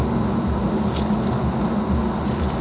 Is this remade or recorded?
recorded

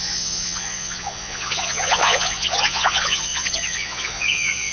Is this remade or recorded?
remade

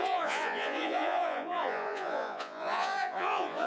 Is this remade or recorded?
remade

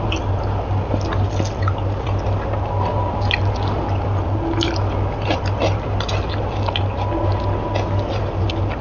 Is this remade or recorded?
recorded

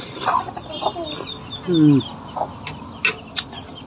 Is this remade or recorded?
recorded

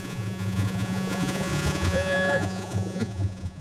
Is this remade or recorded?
remade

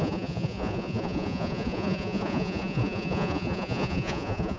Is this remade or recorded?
remade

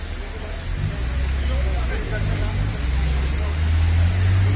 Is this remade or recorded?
recorded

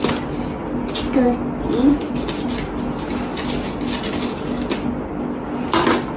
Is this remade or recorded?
recorded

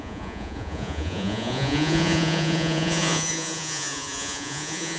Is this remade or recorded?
remade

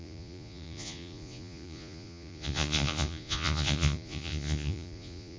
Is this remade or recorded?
remade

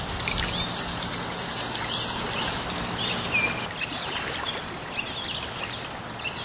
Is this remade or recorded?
recorded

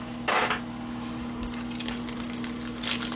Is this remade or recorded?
recorded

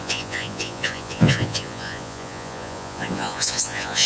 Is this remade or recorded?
remade